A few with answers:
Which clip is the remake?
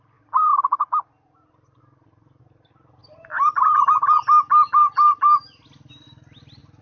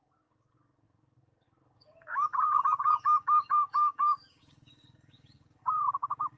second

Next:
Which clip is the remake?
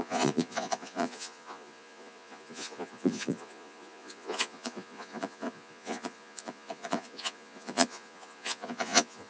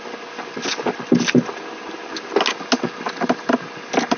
first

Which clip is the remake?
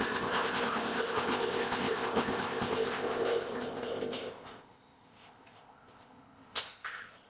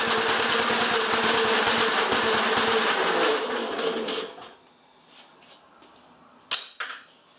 first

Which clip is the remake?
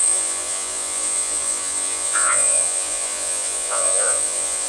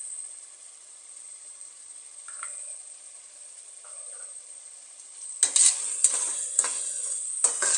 first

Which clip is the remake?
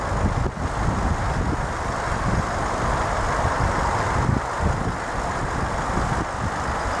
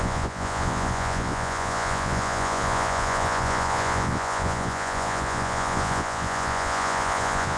second